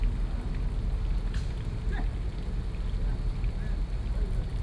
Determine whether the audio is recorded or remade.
recorded